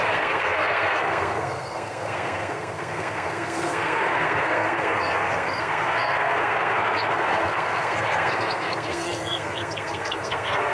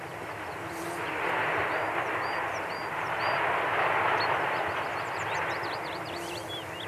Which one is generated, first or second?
first